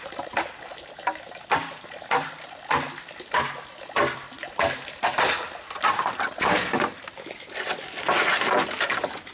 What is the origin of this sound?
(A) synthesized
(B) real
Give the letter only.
A